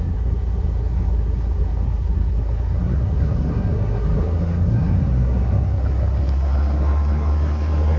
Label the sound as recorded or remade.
remade